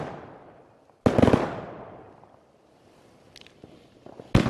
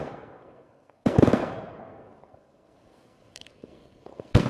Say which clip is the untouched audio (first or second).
first